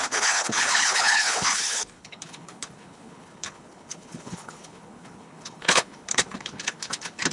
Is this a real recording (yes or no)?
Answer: no